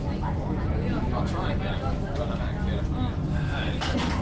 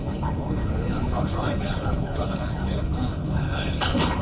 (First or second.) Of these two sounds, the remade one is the second